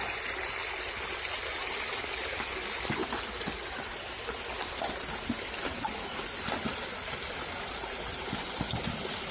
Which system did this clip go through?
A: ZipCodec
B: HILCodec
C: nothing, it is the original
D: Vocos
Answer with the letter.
C